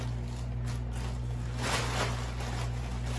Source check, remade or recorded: recorded